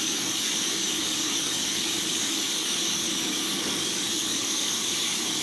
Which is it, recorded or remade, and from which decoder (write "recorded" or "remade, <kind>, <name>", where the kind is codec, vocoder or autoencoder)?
remade, codec, DAC